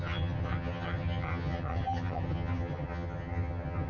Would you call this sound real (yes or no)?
no